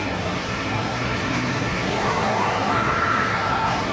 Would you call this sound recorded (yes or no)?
no